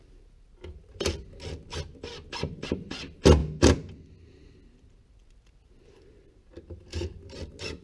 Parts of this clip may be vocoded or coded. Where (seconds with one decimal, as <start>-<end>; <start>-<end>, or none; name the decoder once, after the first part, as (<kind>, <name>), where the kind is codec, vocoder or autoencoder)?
none